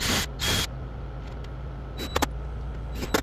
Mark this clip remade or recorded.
recorded